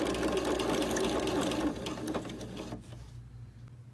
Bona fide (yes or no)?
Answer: yes